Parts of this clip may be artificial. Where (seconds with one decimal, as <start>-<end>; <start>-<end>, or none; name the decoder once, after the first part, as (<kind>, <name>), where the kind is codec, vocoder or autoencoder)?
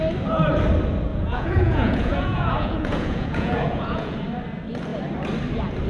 1.1-4.2 (vocoder, Vocos)